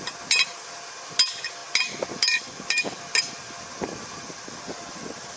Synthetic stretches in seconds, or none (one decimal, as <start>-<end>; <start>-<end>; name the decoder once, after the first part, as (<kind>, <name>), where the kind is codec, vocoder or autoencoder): none